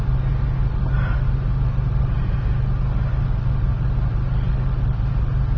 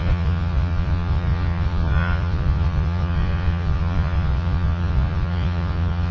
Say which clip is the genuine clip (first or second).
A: first